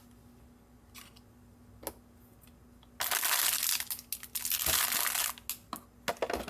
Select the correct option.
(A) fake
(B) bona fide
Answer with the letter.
B